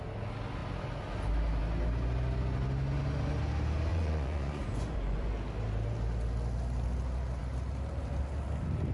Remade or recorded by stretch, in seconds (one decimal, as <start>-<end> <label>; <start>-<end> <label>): 0.0-3.9 recorded; 3.9-5.3 remade; 5.3-8.9 recorded